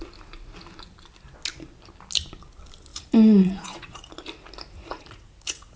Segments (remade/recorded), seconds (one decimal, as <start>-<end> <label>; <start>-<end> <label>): 0.0-2.9 recorded; 2.9-4.1 remade; 4.1-4.8 recorded; 4.8-5.8 remade